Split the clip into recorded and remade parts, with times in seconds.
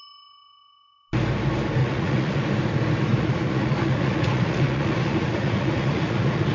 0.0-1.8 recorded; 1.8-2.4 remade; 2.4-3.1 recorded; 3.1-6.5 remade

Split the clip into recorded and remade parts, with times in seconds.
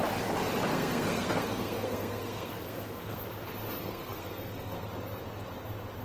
0.0-0.7 recorded; 0.7-3.2 remade; 3.2-3.8 recorded; 3.8-4.9 remade; 4.9-6.0 recorded